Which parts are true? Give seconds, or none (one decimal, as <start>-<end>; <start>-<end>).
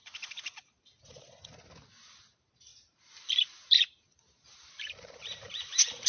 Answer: 0.0-2.1